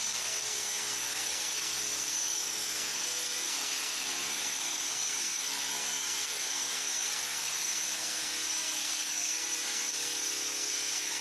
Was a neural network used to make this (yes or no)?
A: yes